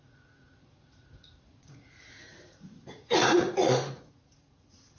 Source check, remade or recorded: remade